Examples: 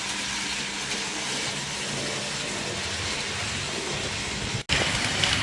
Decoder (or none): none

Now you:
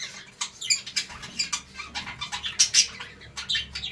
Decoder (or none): none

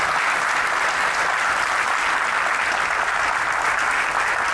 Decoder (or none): none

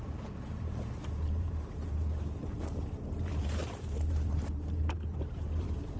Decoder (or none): vocoder, BigVGAN v2